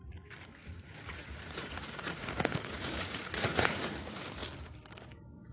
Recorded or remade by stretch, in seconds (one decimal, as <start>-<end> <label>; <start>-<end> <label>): 0.0-0.6 recorded; 0.6-3.9 remade; 3.9-5.5 recorded